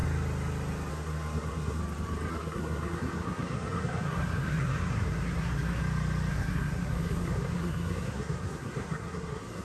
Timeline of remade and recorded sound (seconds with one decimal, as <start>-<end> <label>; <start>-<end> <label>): 0.0-0.9 recorded; 0.9-1.8 remade; 1.8-2.3 recorded; 2.3-5.8 remade; 5.8-6.3 recorded; 6.3-9.6 remade